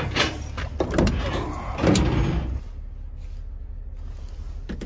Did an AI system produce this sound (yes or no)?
no